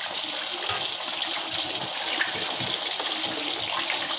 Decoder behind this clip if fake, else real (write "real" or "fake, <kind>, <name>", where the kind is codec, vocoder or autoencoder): real